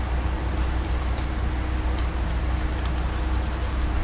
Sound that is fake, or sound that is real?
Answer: real